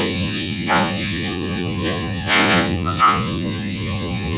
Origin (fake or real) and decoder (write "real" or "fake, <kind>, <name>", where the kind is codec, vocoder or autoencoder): fake, vocoder, Vocos